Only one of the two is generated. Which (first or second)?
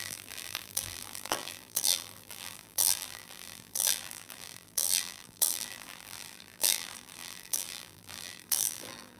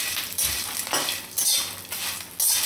first